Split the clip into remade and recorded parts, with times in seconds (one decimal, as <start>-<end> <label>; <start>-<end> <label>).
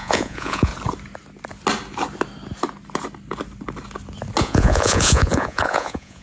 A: 0.0-0.7 remade; 0.7-4.4 recorded; 4.4-6.2 remade